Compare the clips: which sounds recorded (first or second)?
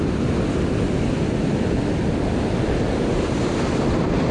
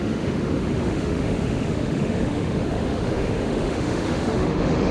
first